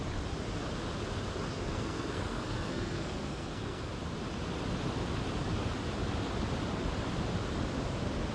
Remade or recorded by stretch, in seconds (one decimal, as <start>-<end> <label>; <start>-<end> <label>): 0.0-1.5 recorded; 1.5-3.9 remade; 3.9-8.3 recorded